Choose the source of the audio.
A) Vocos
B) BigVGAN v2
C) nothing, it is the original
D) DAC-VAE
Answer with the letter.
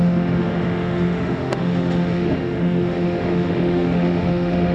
D